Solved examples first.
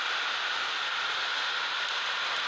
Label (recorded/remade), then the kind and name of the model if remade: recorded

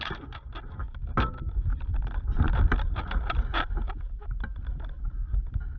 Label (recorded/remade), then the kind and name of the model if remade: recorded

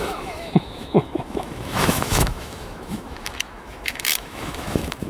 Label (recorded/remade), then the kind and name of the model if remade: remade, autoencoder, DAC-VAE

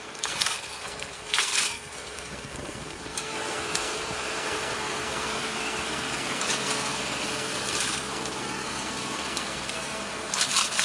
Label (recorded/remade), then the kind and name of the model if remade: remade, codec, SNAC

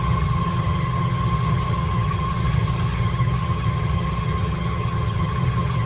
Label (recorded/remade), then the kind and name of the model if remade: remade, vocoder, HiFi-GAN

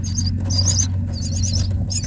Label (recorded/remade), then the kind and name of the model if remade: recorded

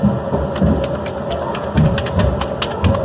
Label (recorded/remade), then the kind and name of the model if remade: recorded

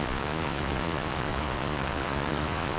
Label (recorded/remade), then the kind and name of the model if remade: remade, vocoder, Vocos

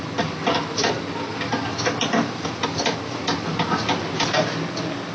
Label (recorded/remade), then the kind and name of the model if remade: remade, vocoder, BigVGAN v2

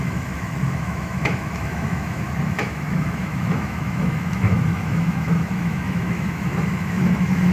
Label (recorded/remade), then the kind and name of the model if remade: remade, autoencoder, DAC-VAE